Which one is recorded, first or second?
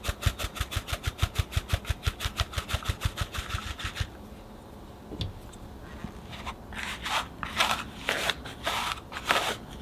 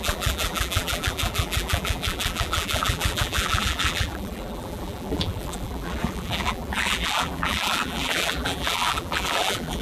first